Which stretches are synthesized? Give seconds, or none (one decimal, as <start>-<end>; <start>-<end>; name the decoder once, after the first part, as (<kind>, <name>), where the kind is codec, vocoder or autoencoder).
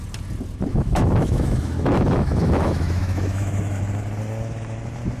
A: 0.7-3.8 (autoencoder, DAC-VAE)